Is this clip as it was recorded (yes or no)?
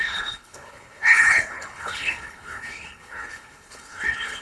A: no